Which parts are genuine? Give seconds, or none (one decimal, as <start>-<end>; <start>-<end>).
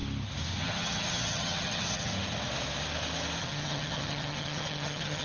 0.0-0.6; 2.1-3.4